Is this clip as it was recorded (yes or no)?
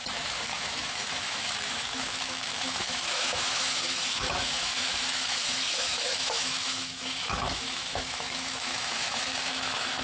no